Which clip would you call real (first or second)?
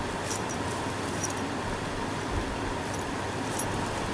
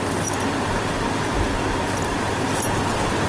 second